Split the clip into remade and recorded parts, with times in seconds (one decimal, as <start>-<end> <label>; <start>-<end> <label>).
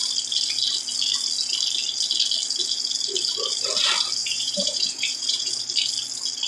0.0-4.2 recorded; 4.2-5.5 remade; 5.5-6.5 recorded